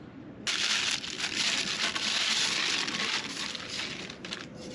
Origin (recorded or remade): recorded